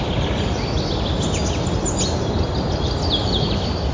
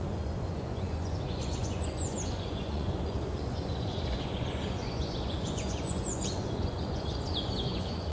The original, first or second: first